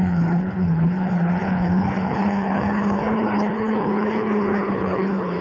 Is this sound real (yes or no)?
no